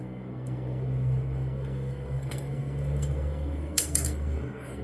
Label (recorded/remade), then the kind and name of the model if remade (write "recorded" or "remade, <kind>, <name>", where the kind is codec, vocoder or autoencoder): remade, codec, SNAC